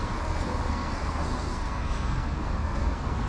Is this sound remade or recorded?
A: remade